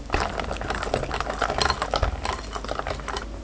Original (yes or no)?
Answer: yes